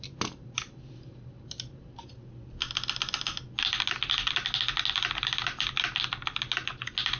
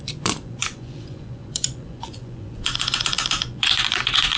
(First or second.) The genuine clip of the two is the first